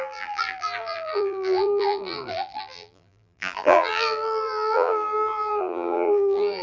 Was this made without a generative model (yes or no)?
no